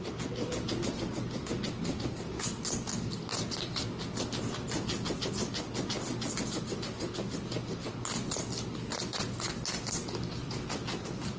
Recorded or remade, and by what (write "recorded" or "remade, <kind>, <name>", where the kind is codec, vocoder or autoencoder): recorded